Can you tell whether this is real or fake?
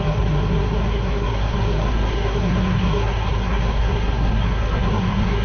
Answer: fake